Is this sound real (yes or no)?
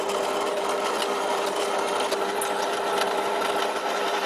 yes